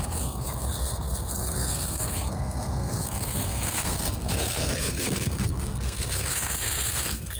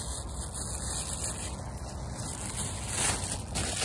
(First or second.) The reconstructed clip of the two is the first